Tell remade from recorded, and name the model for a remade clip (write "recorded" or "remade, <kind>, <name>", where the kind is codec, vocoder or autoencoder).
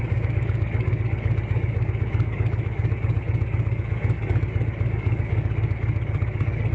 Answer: remade, codec, DAC